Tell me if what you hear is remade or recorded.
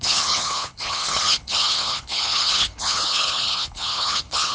remade